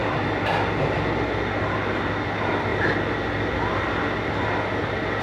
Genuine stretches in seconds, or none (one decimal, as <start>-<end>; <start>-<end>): 0.0-5.2